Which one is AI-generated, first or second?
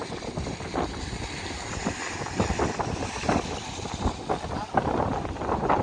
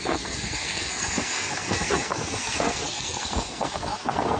second